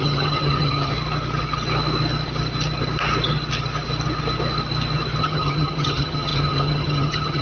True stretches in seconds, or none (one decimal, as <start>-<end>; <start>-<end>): 0.9-5.2